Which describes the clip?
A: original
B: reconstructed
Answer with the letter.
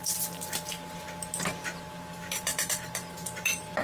B